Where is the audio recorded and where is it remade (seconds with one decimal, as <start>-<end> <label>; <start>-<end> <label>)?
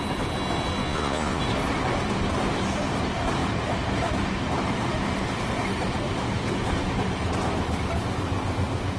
0.0-0.8 recorded; 0.8-1.4 remade; 1.4-9.0 recorded